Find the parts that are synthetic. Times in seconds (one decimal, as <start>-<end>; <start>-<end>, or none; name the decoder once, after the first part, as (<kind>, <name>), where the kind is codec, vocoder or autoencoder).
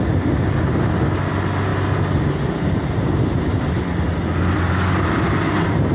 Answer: none